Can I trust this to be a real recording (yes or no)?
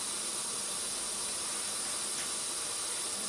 yes